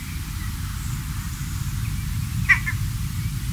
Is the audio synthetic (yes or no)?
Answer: no